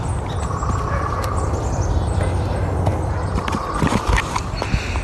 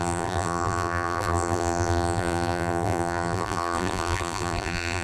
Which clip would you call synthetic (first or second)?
second